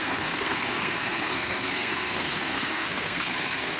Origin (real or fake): fake